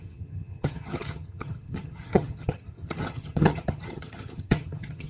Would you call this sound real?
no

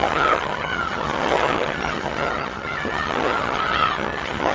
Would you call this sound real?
no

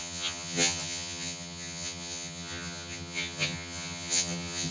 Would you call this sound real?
no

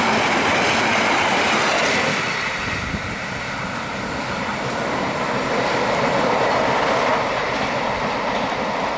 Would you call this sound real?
yes